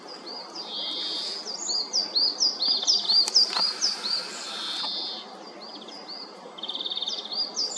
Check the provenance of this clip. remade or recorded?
recorded